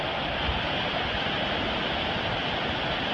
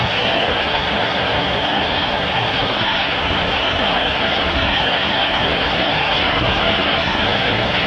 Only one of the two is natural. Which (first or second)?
first